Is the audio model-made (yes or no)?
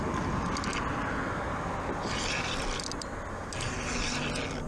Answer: no